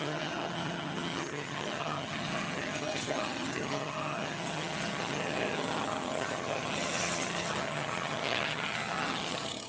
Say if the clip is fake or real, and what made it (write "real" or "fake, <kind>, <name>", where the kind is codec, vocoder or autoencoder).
fake, vocoder, HiFi-GAN